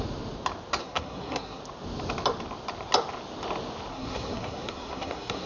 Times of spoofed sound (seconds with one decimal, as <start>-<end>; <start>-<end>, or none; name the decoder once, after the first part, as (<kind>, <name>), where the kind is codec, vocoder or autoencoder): 0.8-1.6 (codec, SNAC); 3.9-5.5